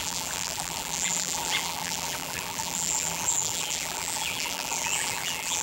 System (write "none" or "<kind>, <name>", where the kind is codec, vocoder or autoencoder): vocoder, BigVGAN v2